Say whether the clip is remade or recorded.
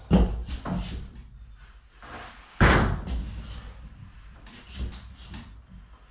recorded